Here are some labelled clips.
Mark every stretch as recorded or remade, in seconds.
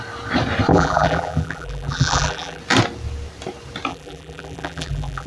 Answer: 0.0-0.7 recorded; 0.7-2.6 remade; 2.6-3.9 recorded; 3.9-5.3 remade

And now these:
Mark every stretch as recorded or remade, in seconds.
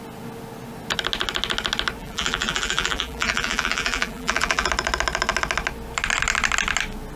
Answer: 0.0-2.0 recorded; 2.0-4.7 remade; 4.7-7.2 recorded